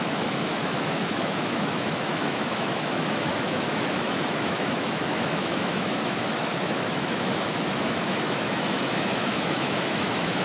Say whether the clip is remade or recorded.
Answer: remade